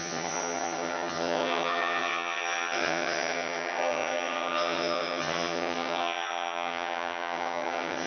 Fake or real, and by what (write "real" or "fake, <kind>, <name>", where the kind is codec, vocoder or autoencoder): fake, vocoder, HiFi-GAN